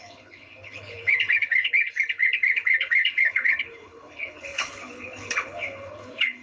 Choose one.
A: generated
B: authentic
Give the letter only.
A